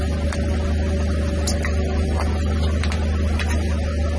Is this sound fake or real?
real